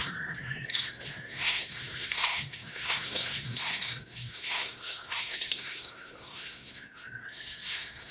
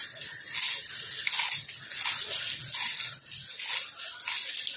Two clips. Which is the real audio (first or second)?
second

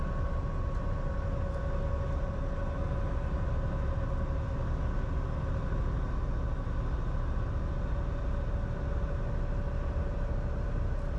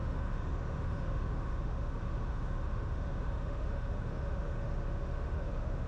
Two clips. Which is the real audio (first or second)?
first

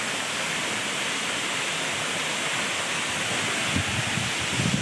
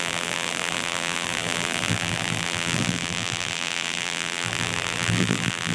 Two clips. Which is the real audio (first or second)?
first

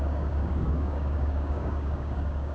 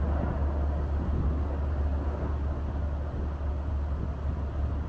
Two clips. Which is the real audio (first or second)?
second